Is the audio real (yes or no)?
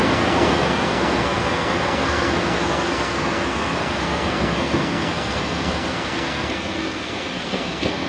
no